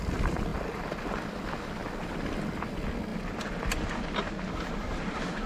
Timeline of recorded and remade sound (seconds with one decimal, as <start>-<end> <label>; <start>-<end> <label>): 0.0-5.5 recorded